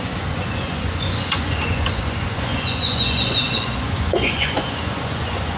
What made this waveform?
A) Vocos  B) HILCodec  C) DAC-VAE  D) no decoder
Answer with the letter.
A